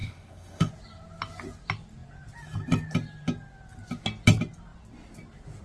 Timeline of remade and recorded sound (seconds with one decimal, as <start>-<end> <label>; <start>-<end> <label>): 0.0-0.7 remade; 0.7-5.6 recorded